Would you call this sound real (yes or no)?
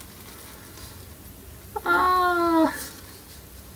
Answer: yes